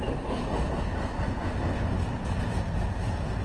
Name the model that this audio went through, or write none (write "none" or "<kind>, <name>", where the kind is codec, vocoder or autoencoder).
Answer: none